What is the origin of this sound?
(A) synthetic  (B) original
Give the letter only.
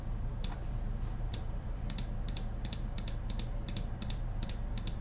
A